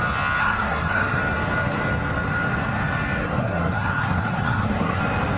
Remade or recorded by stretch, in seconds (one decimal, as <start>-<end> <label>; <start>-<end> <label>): 0.0-0.4 recorded; 0.4-1.2 remade; 1.2-3.2 recorded; 3.2-5.0 remade; 5.0-5.4 recorded

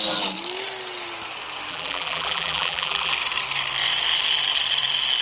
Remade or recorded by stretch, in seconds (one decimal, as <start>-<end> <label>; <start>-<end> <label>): 0.0-1.7 recorded; 1.7-3.1 remade; 3.1-5.2 recorded

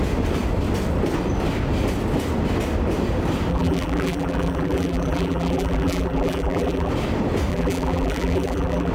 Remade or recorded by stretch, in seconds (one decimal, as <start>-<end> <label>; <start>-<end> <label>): 0.0-3.5 recorded; 3.5-6.9 remade; 6.9-7.5 recorded; 7.5-8.9 remade

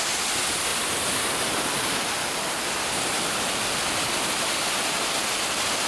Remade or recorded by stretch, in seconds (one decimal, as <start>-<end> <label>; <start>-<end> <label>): 0.0-5.9 recorded

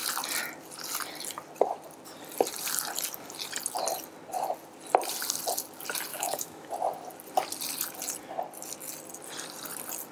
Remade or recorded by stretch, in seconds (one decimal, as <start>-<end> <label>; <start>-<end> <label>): 0.0-6.1 recorded; 6.1-6.7 remade; 6.7-10.1 recorded